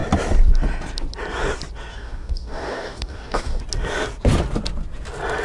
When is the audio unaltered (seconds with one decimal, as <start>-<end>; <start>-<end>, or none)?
0.0-1.9; 3.6-5.4